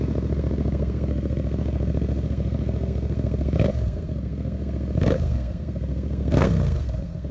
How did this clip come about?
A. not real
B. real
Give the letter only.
A